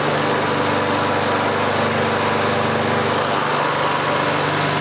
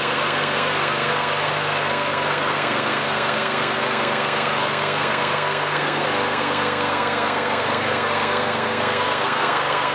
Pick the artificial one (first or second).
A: second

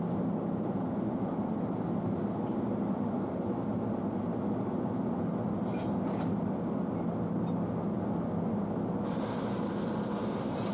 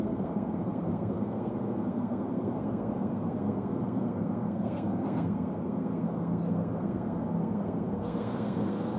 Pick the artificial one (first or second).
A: second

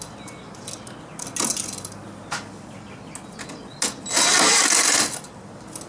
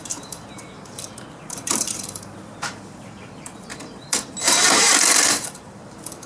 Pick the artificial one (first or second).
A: second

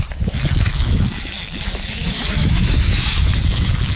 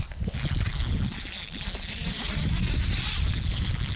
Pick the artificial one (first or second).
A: first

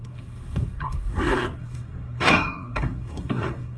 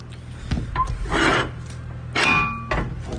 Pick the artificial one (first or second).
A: first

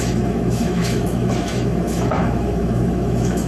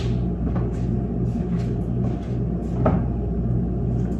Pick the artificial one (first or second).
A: first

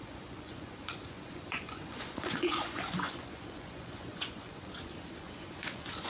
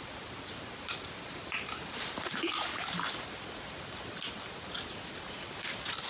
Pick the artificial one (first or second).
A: first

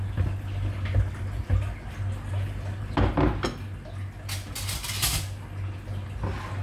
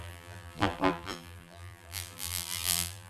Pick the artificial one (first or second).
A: second